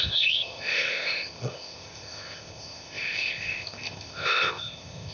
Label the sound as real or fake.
fake